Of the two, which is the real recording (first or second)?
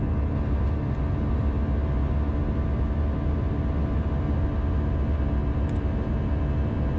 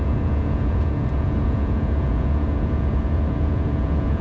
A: first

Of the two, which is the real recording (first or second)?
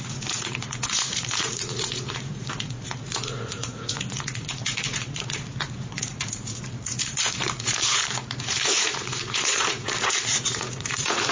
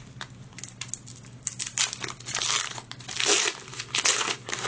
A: second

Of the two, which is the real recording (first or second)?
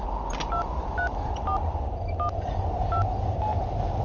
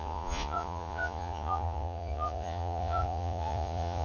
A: first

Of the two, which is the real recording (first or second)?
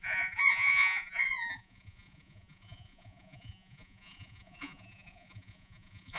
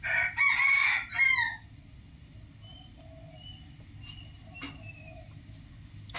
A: second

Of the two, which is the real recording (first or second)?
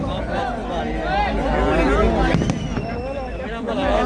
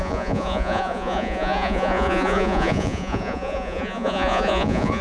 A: first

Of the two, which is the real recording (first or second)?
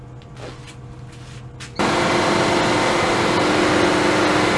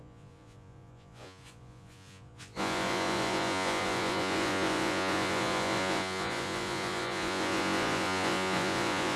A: first